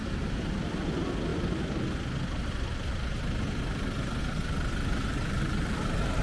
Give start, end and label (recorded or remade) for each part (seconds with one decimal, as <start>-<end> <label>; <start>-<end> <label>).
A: 0.0-5.1 recorded; 5.1-6.2 remade